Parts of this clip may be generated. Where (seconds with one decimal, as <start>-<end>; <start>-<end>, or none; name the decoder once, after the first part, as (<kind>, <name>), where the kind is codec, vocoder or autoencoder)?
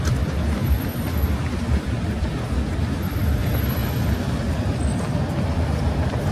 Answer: none